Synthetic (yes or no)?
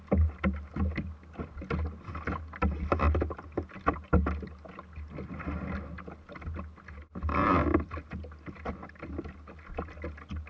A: no